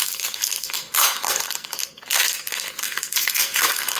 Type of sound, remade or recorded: remade